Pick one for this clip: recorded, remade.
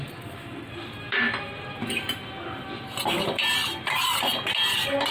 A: recorded